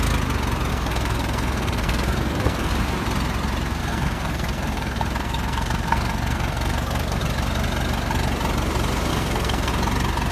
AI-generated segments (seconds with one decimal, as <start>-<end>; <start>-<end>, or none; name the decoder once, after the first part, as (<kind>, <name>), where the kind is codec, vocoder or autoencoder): 0.7-2.7 (codec, SNAC); 3.8-7.2; 9.1-9.7